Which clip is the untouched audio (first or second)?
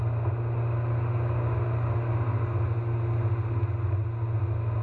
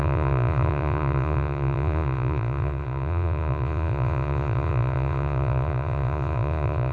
first